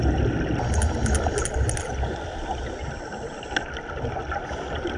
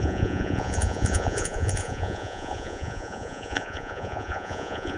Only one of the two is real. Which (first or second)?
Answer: first